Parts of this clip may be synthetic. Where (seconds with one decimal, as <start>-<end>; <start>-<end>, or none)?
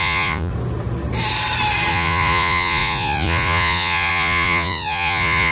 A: 0.0-0.5; 1.9-5.5